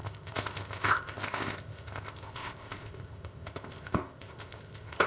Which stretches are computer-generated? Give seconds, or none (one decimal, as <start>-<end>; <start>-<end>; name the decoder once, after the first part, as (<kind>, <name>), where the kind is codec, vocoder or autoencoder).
0.0-5.1 (codec, ZipCodec)